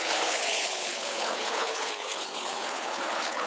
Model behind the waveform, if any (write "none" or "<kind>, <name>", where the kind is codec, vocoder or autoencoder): codec, HILCodec